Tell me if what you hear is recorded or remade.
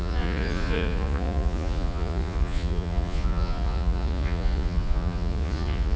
remade